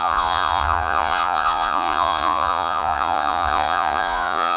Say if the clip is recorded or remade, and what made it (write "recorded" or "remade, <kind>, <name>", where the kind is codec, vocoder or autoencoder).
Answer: remade, vocoder, Vocos